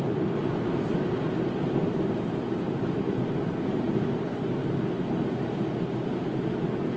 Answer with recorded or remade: recorded